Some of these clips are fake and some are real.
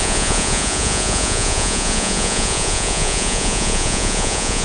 fake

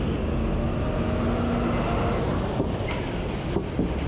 real